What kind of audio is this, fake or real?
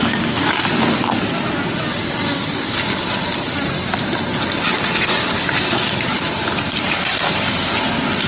real